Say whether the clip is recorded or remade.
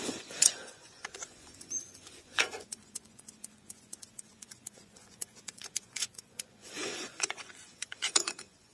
remade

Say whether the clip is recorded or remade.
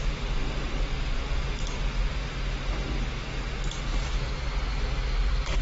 recorded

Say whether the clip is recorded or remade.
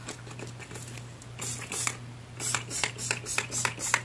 recorded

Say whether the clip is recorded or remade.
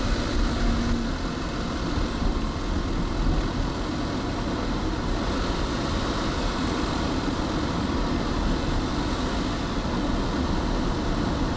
recorded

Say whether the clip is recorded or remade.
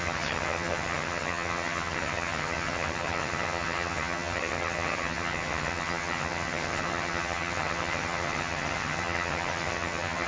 remade